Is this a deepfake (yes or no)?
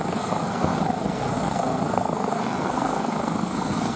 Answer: yes